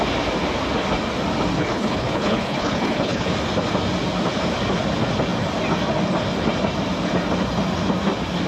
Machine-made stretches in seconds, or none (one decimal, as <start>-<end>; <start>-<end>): 1.6-3.3